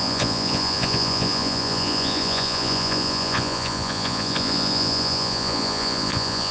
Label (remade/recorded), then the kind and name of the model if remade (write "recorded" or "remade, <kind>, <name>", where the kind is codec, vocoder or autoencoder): remade, vocoder, Vocos